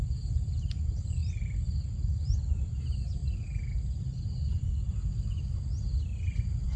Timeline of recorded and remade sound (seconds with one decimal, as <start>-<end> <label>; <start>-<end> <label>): 0.0-6.8 recorded